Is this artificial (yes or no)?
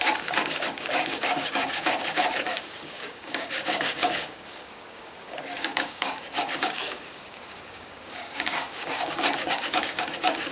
yes